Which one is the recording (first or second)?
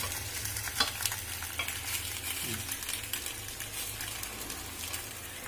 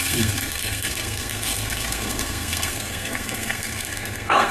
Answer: first